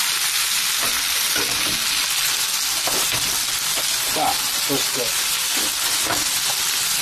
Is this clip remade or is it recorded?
recorded